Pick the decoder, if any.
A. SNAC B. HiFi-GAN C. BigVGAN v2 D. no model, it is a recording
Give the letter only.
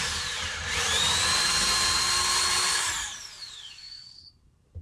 C